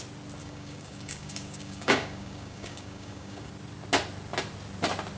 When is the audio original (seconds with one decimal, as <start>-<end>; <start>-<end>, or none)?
0.0-0.4; 3.5-5.2